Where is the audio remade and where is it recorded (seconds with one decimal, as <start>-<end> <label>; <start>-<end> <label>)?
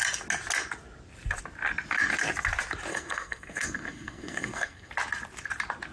0.0-2.9 recorded; 2.9-4.9 remade; 4.9-5.9 recorded